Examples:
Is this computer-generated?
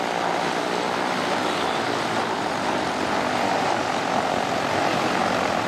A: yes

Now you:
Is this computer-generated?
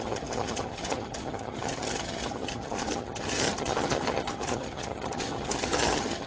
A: yes